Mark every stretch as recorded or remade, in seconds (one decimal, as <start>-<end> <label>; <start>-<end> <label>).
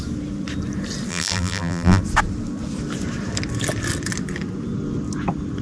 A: 0.0-1.1 recorded; 1.1-2.0 remade; 2.0-5.6 recorded